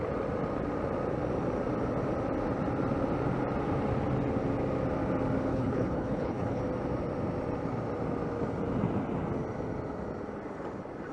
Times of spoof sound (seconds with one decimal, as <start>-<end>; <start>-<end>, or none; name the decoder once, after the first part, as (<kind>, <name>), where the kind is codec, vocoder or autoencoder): 5.5-6.6 (codec, HILCodec)